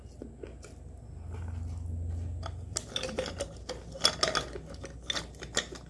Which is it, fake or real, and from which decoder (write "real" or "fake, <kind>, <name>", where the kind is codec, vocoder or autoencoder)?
real